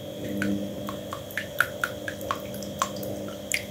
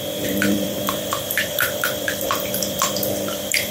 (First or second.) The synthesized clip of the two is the second